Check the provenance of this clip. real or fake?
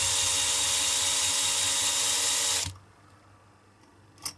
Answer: real